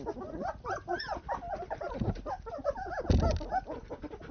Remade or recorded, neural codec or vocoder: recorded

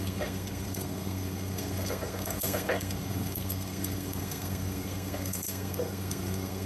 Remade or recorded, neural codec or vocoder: remade, codec, SNAC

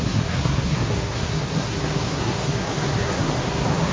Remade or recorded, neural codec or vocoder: remade, codec, SNAC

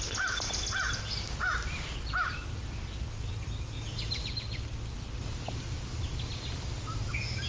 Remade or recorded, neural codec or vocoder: recorded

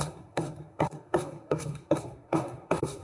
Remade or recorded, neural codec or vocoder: remade, codec, SNAC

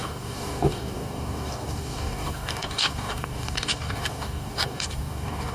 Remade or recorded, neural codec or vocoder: remade, codec, DAC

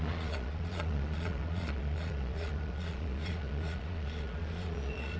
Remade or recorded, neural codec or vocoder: remade, vocoder, Vocos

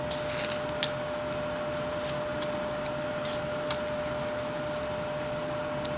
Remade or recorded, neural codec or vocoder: recorded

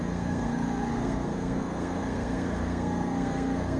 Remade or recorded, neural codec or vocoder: remade, codec, SNAC